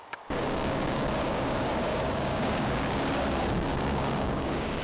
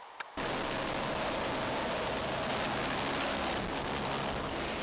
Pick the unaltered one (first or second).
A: second